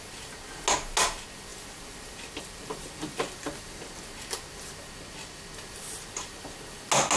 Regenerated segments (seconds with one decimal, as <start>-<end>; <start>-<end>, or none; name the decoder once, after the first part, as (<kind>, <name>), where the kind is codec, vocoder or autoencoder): 1.5-4.0 (vocoder, BigVGAN v2)